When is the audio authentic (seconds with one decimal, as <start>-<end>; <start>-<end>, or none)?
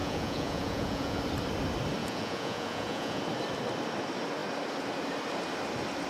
1.2-2.0; 3.2-6.1